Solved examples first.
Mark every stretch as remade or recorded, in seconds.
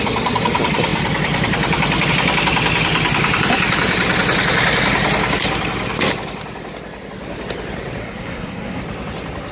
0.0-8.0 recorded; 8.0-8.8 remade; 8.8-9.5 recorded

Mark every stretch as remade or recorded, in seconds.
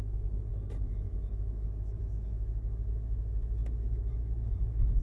0.0-5.0 remade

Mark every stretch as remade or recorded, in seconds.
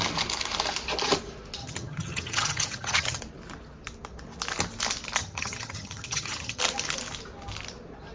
0.0-1.6 recorded; 1.6-3.2 remade; 3.2-5.2 recorded; 5.2-6.6 remade; 6.6-8.1 recorded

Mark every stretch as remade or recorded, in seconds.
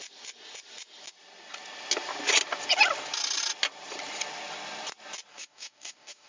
0.0-5.3 recorded; 5.3-6.3 remade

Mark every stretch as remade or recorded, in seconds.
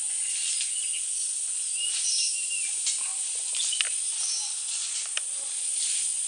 0.0-6.3 recorded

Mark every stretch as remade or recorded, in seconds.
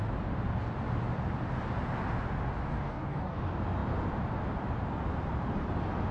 0.0-2.7 recorded; 2.7-3.4 remade; 3.4-6.1 recorded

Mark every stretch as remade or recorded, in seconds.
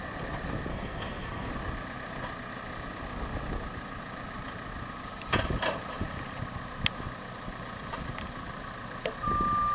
0.0-0.7 recorded; 0.7-1.5 remade; 1.5-9.7 recorded